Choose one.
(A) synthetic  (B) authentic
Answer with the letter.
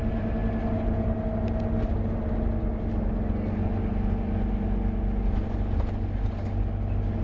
B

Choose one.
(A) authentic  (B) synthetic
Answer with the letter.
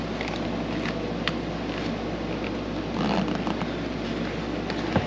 A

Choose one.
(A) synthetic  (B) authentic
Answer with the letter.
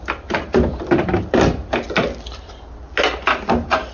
B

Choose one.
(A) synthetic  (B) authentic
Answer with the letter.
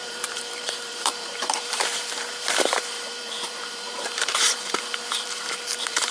A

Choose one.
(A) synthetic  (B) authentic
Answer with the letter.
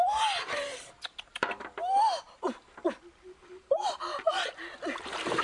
A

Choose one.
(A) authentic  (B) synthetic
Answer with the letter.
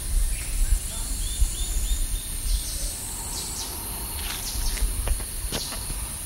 B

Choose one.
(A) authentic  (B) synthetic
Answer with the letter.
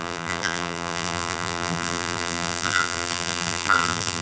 B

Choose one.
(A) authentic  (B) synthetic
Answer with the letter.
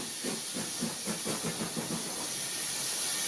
A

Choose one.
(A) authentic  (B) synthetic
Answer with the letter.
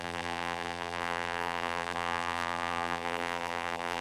B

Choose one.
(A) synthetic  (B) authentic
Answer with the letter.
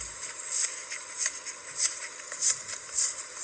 A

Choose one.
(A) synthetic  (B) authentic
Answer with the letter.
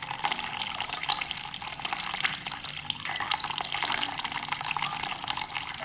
B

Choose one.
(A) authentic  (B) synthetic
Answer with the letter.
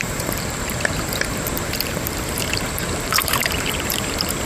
B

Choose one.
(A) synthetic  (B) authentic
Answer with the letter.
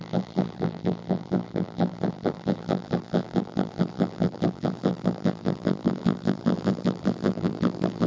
A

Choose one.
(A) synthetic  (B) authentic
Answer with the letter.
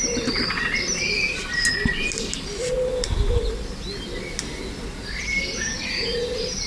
B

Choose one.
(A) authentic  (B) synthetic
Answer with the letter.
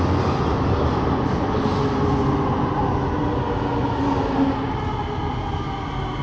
A